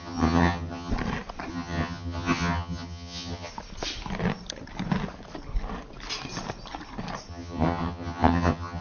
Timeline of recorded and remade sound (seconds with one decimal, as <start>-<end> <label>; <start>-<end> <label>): 0.0-0.9 remade; 0.9-1.5 recorded; 1.5-3.5 remade; 3.5-7.3 recorded; 7.3-8.8 remade